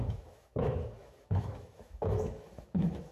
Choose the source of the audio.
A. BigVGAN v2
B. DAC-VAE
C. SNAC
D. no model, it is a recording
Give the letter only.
B